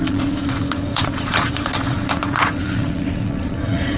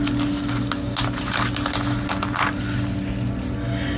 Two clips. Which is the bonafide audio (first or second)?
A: second